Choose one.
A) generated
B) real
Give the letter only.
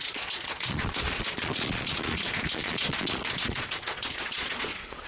A